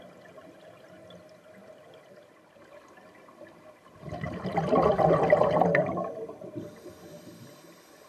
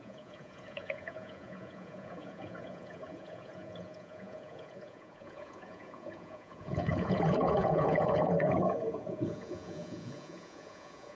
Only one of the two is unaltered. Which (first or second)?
first